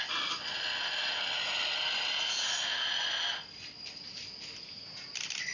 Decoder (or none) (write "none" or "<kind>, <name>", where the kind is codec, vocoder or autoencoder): none